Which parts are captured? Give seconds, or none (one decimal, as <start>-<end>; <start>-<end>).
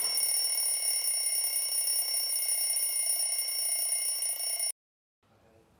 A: 0.0-5.8